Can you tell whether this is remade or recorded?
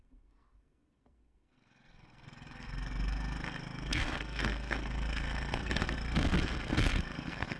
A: remade